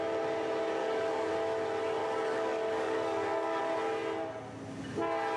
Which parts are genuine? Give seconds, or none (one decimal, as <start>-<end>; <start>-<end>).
0.0-0.8; 1.3-2.0; 3.6-5.4